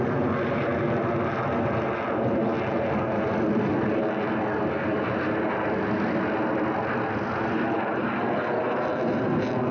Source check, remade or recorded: recorded